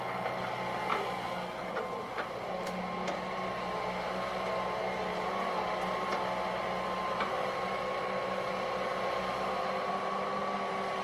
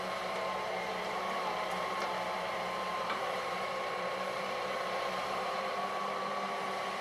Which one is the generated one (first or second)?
second